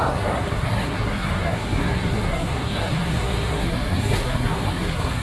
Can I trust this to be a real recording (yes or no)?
no